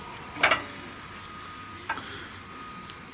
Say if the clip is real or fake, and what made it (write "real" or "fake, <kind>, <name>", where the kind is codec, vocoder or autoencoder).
real